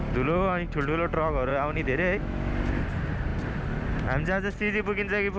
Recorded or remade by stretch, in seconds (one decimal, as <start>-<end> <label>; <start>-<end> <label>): 0.0-1.5 recorded; 1.5-2.5 remade; 2.5-5.4 recorded